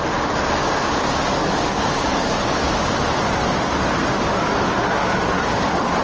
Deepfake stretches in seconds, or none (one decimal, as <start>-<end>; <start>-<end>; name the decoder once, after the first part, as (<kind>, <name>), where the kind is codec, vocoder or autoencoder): 1.4-2.3 (codec, DAC); 4.0-4.5; 5.0-6.0